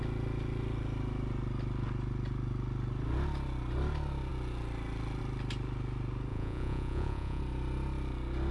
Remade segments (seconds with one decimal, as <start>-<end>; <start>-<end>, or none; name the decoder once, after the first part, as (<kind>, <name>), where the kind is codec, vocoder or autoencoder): 6.3-7.4 (vocoder, Vocos)